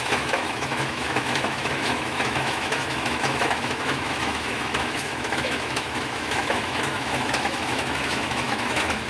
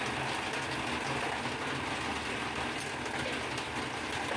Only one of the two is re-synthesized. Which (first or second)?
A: first